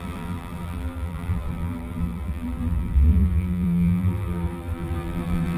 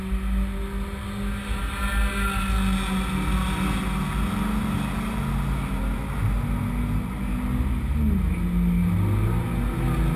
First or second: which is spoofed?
first